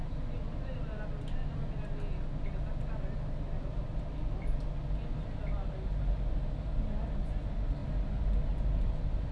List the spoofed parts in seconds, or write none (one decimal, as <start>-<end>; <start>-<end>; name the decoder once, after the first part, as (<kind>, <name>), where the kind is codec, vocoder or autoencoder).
none